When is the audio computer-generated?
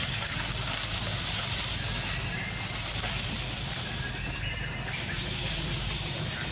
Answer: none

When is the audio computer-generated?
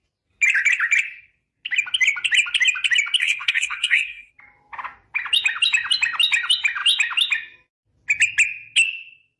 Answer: 3.2-4.3 (codec, SNAC)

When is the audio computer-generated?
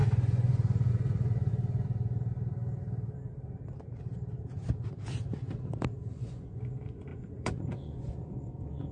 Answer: 0.0-1.5 (vocoder, Vocos); 6.0-8.9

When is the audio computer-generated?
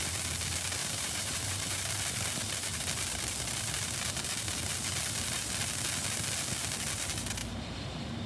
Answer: 0.8-1.8 (vocoder, BigVGAN v2); 7.4-8.3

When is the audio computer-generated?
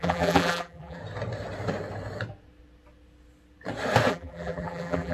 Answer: 0.0-1.0 (vocoder, BigVGAN v2); 4.1-5.1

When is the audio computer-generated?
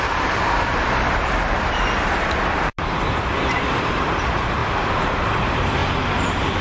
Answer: 0.0-2.7 (vocoder, BigVGAN v2); 3.3-4.6; 5.3-6.6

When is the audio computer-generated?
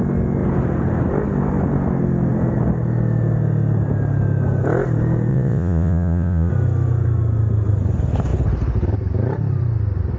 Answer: 5.3-6.5 (vocoder, Vocos)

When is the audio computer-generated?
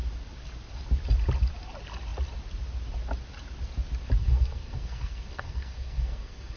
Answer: 4.2-6.6 (codec, SNAC)